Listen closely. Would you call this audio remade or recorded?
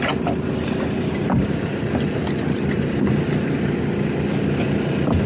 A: recorded